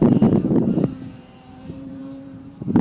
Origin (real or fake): fake